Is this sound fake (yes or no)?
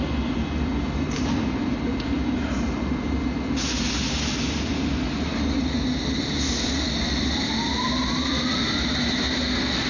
no